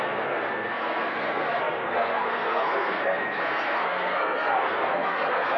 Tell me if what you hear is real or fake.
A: fake